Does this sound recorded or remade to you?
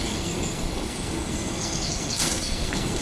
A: remade